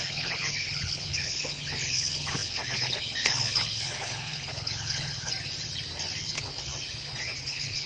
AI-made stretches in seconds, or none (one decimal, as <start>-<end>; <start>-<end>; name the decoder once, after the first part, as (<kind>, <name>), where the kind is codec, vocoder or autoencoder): 0.0-5.3 (codec, HILCodec); 6.2-6.7; 7.5-7.9